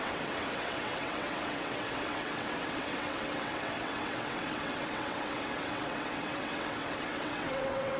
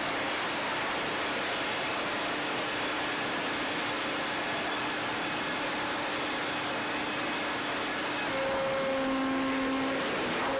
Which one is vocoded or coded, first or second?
first